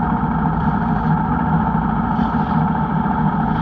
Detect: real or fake real